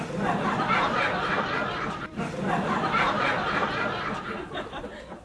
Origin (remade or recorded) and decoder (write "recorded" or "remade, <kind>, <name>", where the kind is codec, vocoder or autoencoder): remade, vocoder, BigVGAN v2